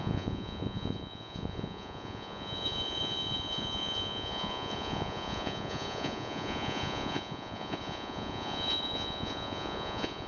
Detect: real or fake fake